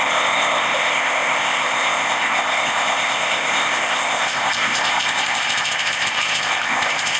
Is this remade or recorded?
remade